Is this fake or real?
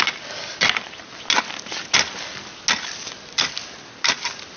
real